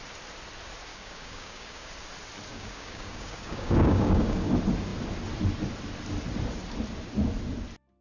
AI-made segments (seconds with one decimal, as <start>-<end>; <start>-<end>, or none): 0.9-1.9; 2.5-4.5